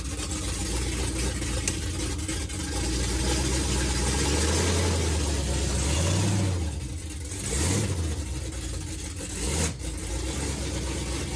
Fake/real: real